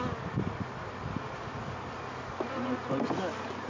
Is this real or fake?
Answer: real